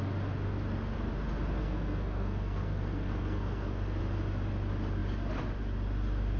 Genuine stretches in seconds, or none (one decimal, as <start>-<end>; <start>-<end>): 0.0-1.6; 4.0-6.4